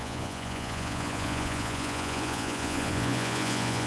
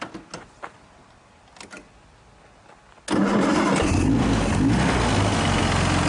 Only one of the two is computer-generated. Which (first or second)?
first